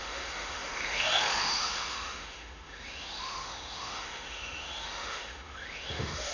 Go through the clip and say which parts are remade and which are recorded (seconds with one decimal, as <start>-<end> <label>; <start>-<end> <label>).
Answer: 0.0-6.3 remade